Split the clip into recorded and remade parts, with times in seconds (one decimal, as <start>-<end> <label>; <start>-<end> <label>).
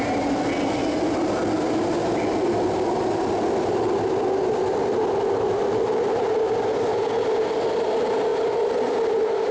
0.0-9.5 recorded